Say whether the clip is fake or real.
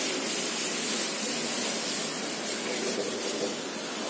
real